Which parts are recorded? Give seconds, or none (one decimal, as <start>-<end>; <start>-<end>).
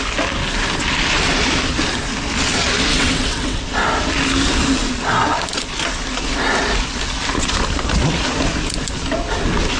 0.0-2.9; 3.6-9.8